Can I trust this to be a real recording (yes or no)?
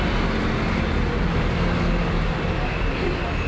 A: yes